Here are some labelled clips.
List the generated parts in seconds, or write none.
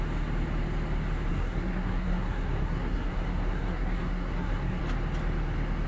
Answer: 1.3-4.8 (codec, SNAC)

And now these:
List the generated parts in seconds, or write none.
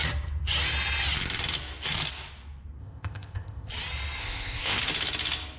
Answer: 2.8-3.7 (codec, ZipCodec); 4.2-4.8